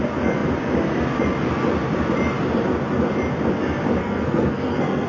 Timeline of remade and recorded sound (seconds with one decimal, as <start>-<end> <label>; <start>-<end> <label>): 0.0-4.0 recorded; 4.0-5.1 remade